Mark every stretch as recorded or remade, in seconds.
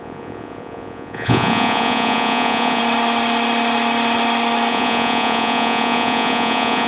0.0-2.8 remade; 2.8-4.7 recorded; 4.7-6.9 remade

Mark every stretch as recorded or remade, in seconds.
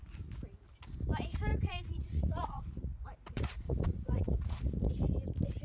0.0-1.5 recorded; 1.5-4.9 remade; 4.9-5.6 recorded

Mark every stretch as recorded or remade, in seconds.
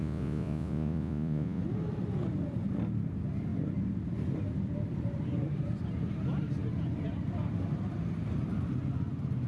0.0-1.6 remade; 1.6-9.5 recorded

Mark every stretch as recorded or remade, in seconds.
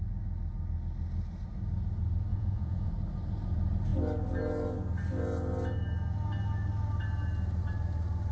0.0-2.3 recorded; 2.3-2.9 remade; 2.9-8.3 recorded